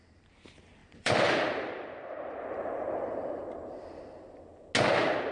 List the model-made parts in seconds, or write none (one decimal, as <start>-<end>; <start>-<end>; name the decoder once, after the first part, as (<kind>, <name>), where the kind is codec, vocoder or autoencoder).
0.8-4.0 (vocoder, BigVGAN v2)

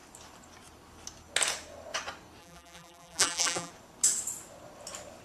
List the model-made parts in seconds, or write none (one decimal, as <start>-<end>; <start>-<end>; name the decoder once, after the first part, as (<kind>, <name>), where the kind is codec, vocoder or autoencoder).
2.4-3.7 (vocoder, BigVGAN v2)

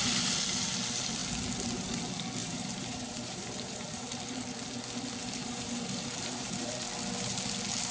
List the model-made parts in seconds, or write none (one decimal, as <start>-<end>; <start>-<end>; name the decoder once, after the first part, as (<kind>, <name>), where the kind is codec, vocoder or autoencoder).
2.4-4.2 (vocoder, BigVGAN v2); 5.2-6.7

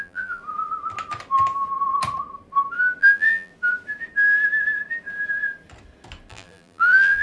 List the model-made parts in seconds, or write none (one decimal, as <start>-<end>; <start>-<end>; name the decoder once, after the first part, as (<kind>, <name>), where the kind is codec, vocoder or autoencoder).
0.0-0.4 (vocoder, BigVGAN v2); 3.0-3.5; 6.3-7.2

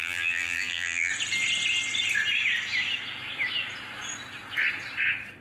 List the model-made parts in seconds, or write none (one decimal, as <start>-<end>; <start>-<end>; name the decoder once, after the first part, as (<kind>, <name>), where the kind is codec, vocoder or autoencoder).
0.0-1.1 (vocoder, BigVGAN v2)